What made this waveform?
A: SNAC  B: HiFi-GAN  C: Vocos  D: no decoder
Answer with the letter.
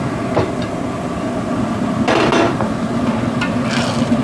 D